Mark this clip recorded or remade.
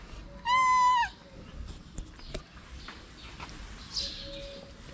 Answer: recorded